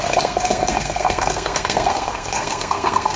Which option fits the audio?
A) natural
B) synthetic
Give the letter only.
B